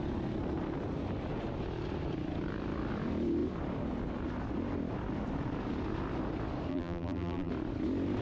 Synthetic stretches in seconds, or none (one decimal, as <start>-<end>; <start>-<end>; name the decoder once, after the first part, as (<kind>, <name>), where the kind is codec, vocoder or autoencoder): 6.7-7.5 (vocoder, BigVGAN v2)